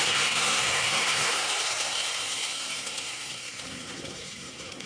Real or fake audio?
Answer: fake